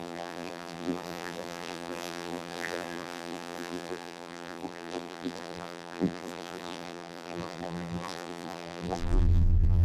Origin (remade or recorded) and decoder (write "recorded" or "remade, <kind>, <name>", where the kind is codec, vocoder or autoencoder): remade, vocoder, BigVGAN v2